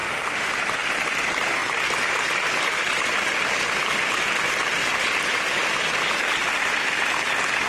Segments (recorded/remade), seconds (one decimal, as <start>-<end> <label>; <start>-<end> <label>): 0.0-0.5 remade; 0.5-7.7 recorded